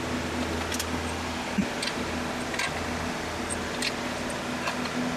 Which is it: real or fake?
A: real